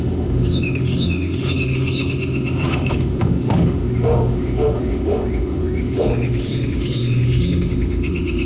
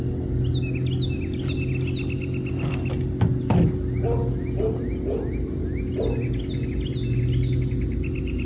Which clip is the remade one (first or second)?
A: first